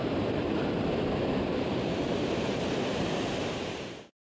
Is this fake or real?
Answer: fake